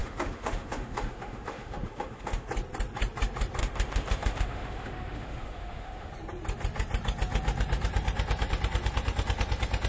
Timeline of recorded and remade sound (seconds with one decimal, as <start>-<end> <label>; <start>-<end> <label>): 0.0-2.5 remade; 2.5-3.6 recorded; 3.6-6.1 remade; 6.1-9.9 recorded